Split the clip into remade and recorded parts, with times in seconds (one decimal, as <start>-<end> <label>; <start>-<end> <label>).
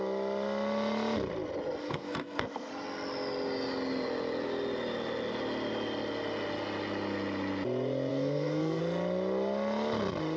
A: 0.0-1.8 recorded; 1.8-2.7 remade; 2.7-8.1 recorded; 8.1-8.8 remade; 8.8-10.4 recorded